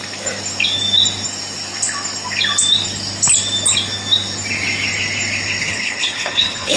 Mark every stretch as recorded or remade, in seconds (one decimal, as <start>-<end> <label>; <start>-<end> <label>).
0.0-5.6 recorded; 5.6-6.8 remade